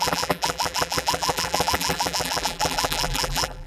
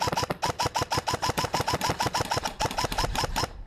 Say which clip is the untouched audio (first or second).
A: second